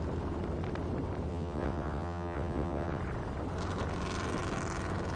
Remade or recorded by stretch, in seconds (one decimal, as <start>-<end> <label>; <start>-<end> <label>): 0.0-1.3 recorded; 1.3-3.0 remade; 3.0-5.2 recorded